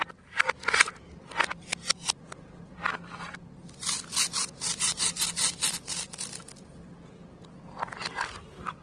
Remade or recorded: recorded